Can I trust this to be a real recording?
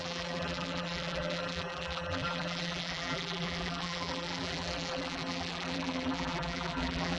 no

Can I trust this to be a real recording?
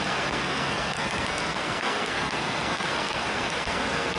no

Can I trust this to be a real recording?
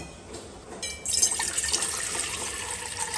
yes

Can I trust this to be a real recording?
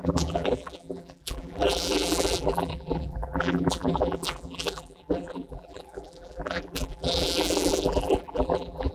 no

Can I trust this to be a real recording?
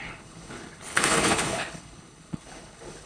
no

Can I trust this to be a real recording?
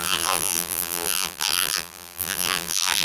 no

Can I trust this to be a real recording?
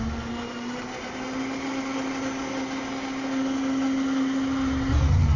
yes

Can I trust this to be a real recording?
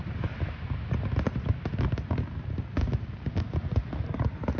yes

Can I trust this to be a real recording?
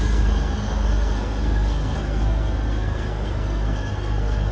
no